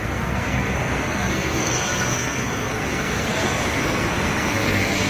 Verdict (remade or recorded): remade